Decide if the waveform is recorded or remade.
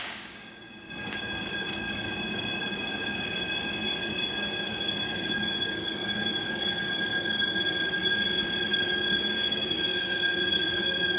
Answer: remade